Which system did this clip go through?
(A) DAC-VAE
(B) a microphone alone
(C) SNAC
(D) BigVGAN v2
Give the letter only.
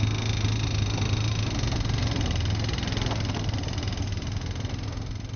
B